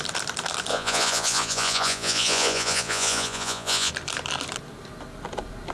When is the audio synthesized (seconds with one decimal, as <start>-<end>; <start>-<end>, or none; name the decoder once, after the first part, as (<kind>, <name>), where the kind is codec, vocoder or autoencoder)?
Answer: 0.7-3.9 (vocoder, Vocos)